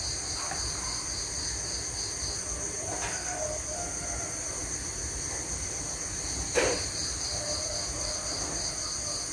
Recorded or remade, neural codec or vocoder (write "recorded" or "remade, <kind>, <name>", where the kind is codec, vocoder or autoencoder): recorded